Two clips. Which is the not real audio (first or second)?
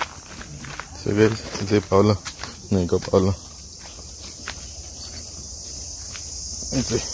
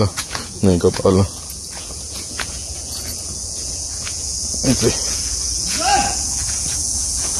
second